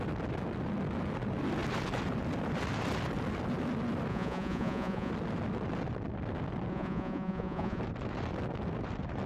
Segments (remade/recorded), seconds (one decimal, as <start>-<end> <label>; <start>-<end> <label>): 0.0-4.1 recorded; 4.1-5.1 remade; 5.1-6.7 recorded; 6.7-7.8 remade; 7.8-9.3 recorded